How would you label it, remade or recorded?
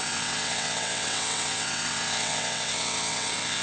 remade